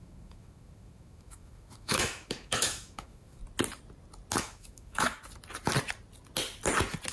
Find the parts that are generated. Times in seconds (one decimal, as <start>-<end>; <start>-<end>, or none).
0.0-3.4; 4.4-5.2